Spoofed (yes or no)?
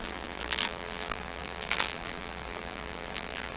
yes